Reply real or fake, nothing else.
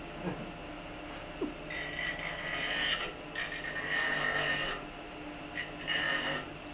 real